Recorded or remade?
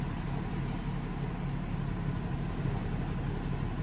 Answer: recorded